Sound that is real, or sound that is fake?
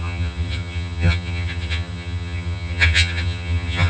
fake